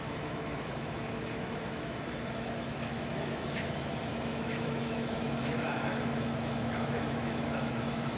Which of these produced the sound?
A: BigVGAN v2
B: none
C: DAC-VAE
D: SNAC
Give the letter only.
C